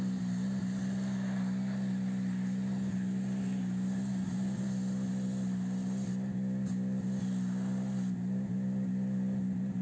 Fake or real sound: real